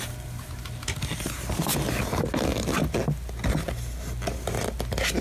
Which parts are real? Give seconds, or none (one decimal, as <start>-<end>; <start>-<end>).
0.0-5.2